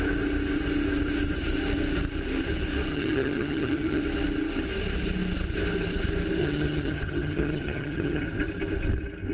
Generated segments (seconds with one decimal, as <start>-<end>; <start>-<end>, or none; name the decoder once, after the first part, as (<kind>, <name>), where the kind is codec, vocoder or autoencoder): 2.9-4.0 (vocoder, HiFi-GAN); 6.4-8.2